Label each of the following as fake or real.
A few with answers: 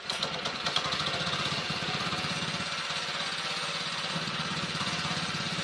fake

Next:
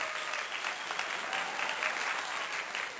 real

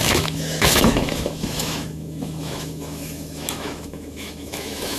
fake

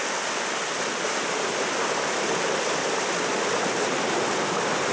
real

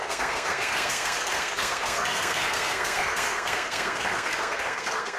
fake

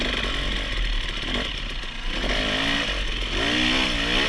real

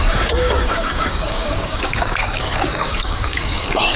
fake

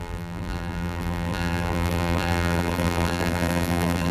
fake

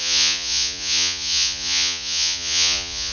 fake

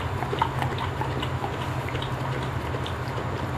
real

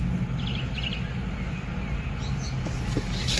real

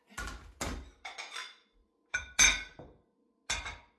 real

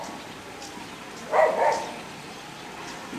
real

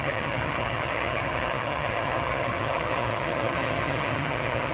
fake